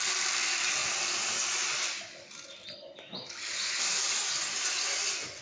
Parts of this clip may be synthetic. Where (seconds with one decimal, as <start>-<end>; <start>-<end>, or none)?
none